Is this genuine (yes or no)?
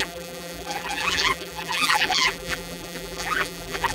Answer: no